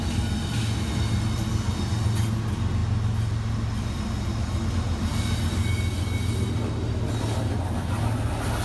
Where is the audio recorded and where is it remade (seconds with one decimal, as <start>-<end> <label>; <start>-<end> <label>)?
0.0-8.6 recorded